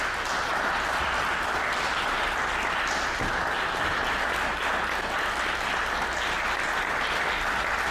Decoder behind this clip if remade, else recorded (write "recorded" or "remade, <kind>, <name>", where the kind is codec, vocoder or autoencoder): recorded